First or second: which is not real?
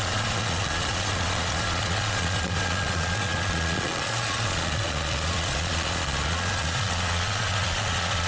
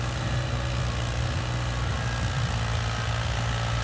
first